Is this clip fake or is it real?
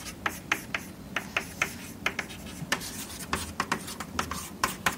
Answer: real